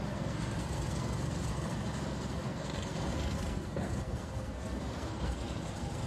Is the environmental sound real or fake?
fake